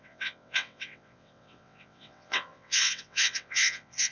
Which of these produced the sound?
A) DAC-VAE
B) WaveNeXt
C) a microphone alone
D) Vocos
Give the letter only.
B